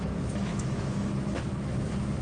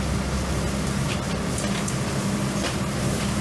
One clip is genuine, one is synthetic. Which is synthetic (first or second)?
first